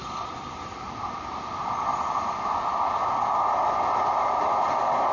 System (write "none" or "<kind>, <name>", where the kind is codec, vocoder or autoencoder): none